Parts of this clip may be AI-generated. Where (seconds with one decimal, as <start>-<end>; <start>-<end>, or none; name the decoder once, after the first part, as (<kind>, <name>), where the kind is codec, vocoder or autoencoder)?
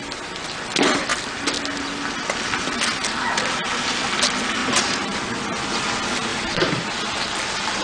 4.6-5.2 (vocoder, BigVGAN v2); 6.3-6.9